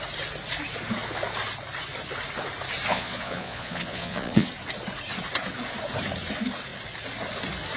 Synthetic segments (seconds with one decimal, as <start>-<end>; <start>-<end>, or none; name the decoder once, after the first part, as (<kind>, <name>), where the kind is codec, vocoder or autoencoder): 2.9-4.5 (vocoder, Vocos)